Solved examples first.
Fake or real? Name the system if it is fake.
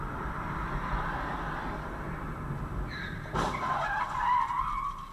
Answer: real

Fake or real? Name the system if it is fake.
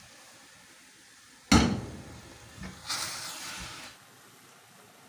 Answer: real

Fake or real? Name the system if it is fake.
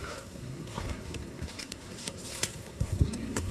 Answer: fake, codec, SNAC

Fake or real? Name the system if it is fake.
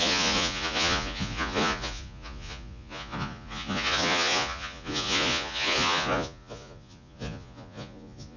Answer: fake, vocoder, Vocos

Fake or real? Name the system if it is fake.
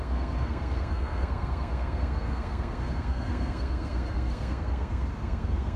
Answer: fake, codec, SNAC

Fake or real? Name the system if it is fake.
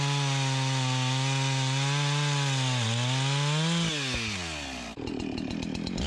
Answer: real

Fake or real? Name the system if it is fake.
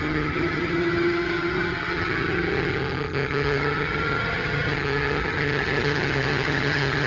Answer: fake, vocoder, HiFi-GAN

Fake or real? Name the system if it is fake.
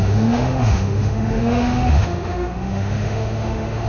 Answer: fake, autoencoder, DAC-VAE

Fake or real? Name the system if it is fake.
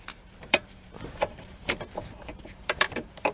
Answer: fake, vocoder, BigVGAN v2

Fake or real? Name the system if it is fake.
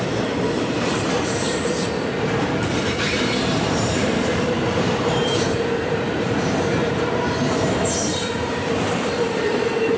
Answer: fake, vocoder, BigVGAN v2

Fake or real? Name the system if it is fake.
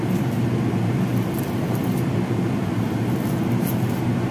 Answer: real